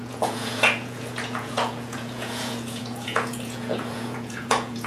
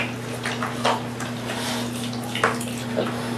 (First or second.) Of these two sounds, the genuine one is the second